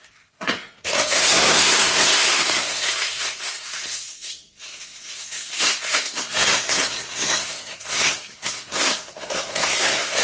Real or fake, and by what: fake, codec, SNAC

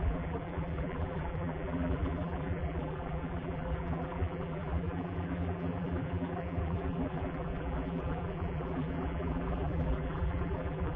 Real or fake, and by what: fake, vocoder, BigVGAN v2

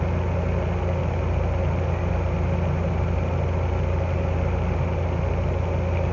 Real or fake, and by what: real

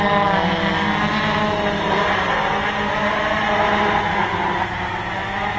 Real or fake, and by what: real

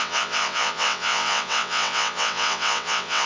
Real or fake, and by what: fake, vocoder, WaveNeXt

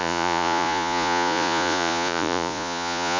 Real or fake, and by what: fake, vocoder, Vocos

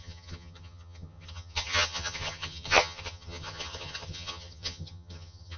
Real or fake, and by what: fake, vocoder, HiFi-GAN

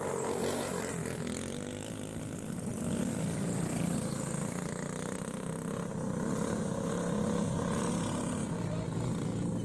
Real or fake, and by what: real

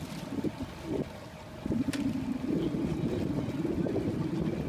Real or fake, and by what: real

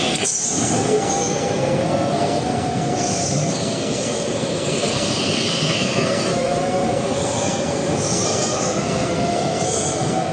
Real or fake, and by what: fake, codec, SNAC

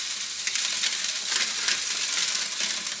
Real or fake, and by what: real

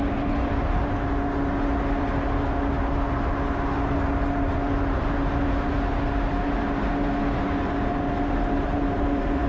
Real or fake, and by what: real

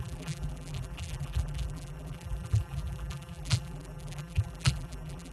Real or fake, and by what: fake, vocoder, BigVGAN v2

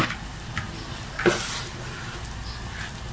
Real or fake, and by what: real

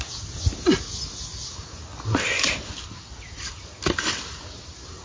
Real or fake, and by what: real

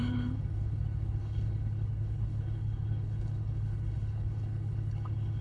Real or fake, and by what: fake, codec, HILCodec